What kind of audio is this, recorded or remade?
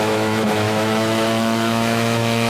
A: remade